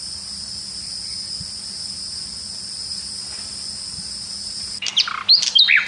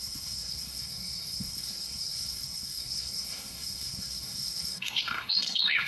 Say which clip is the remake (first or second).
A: second